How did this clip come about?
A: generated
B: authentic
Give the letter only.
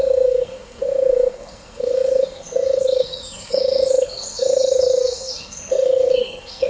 A